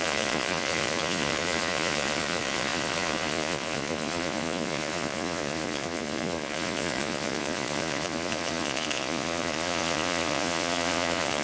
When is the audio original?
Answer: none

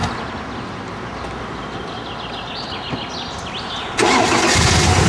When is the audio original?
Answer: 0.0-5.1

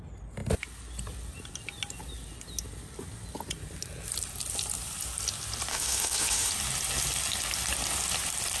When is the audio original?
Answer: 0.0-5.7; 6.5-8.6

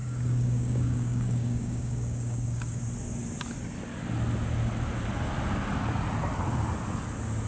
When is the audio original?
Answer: 2.8-7.5

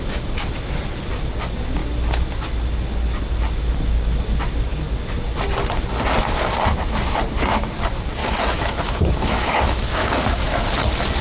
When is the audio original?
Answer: 0.0-8.2; 10.7-11.2

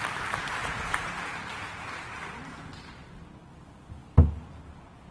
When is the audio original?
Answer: 0.0-0.6; 1.2-5.1

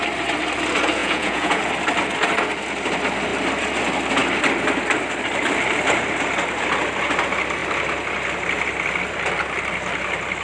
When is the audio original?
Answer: 0.0-1.0; 1.6-10.4

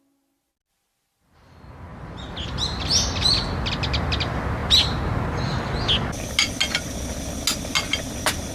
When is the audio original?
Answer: 0.0-8.5